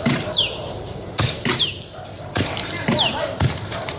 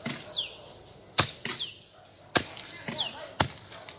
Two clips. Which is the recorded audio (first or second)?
second